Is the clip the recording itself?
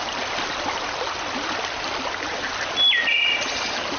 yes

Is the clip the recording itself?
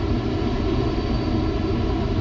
yes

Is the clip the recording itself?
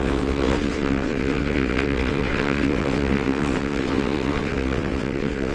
no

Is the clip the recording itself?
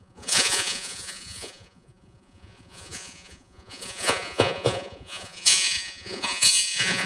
no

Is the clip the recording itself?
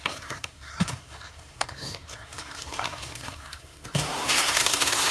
no